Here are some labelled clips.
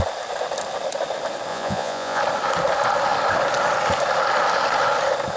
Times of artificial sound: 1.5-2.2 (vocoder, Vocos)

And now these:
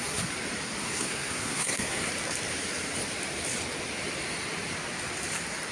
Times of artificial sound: 0.8-2.1 (codec, SNAC)

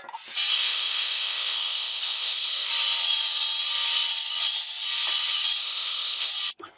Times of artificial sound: 0.5-2.7 (codec, ZipCodec); 5.6-6.3

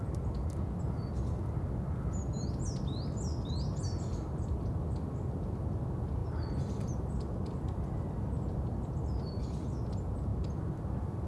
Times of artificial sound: none

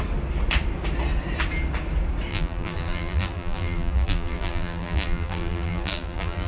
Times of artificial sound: 2.3-6.5 (vocoder, BigVGAN v2)

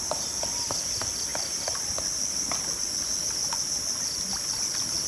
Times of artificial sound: none